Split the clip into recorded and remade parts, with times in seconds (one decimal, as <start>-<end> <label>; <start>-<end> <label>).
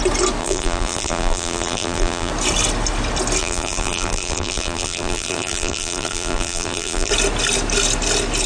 0.0-0.4 recorded; 0.4-2.3 remade; 2.3-3.4 recorded; 3.4-7.1 remade; 7.1-8.5 recorded